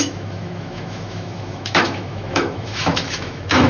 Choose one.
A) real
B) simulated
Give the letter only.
B